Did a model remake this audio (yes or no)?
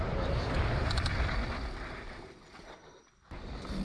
yes